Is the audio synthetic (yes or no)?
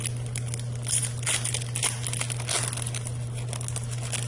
no